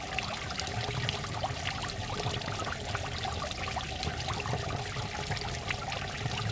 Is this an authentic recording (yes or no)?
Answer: yes